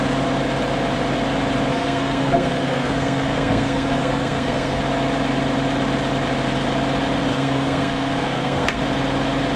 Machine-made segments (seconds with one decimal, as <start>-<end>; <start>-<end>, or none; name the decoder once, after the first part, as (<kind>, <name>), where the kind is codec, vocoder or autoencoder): 1.7-4.8 (codec, SNAC); 7.3-8.8